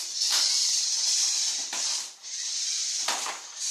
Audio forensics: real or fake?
fake